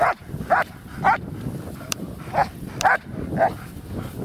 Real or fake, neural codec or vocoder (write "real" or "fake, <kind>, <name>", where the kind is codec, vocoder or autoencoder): real